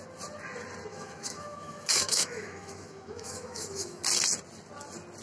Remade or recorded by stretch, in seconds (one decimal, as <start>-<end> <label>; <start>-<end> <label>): 0.0-0.9 recorded; 0.9-4.0 remade; 4.0-5.2 recorded